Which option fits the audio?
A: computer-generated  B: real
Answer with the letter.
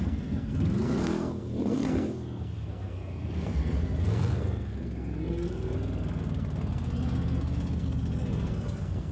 A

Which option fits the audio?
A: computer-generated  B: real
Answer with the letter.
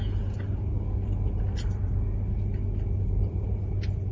B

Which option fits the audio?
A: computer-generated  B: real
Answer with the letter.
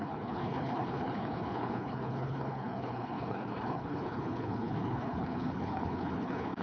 A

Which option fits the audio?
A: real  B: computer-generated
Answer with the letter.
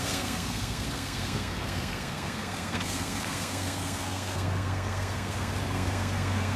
B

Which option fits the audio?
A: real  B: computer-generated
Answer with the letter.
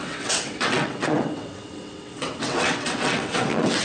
B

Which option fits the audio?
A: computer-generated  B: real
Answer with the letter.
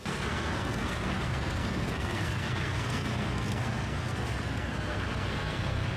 A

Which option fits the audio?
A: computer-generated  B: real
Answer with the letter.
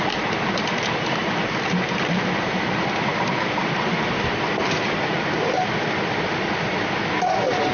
B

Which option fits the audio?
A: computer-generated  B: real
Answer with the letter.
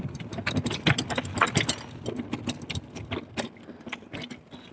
B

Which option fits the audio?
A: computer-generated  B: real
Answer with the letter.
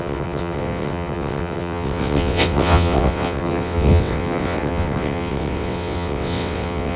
A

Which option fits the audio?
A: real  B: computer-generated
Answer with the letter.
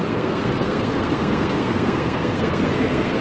B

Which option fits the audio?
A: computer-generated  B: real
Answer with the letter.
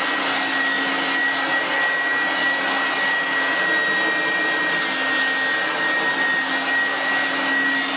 B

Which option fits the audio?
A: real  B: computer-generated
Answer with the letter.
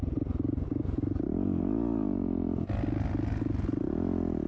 A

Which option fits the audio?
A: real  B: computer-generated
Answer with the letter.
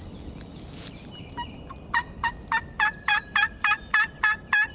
A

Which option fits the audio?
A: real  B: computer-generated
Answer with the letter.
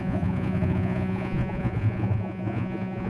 B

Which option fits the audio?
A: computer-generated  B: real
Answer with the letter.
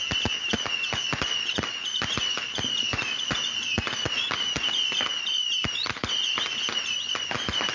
B